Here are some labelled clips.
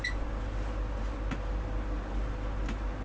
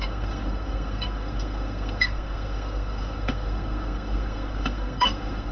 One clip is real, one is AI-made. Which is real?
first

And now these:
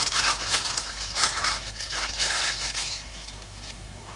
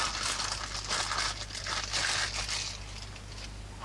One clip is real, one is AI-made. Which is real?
second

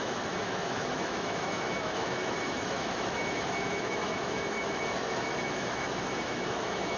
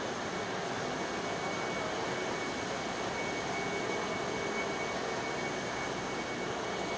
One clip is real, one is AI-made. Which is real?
second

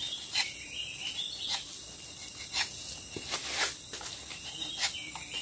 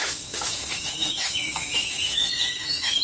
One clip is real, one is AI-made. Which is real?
first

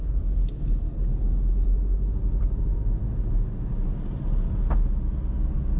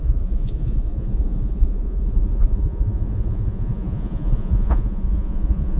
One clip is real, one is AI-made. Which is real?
first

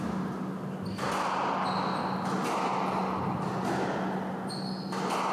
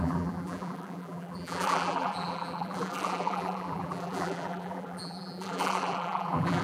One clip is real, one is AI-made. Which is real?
first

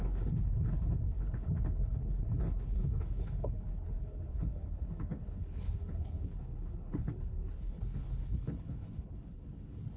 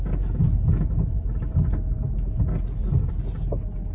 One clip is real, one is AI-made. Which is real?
second